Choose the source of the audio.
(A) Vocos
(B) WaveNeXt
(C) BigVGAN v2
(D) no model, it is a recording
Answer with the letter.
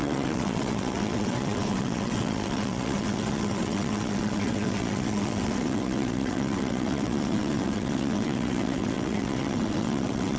B